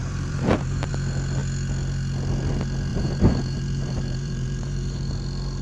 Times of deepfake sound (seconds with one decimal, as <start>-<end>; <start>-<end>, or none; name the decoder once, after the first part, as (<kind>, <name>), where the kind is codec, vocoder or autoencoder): 0.0-0.9 (vocoder, BigVGAN v2); 2.9-5.1